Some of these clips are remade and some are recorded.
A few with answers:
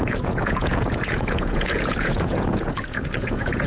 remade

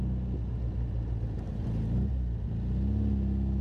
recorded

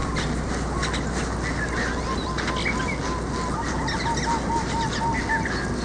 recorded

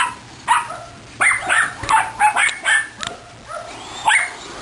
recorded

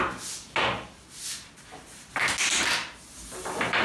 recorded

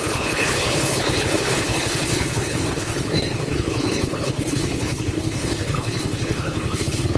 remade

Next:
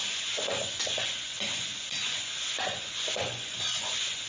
remade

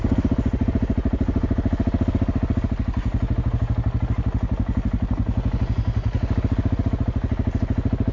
recorded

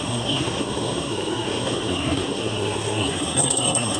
remade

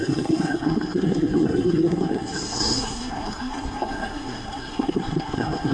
remade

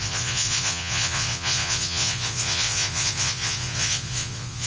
remade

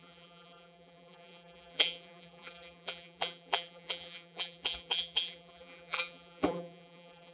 remade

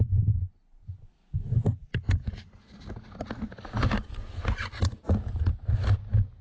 recorded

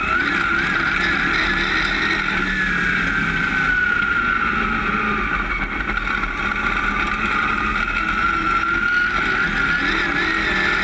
recorded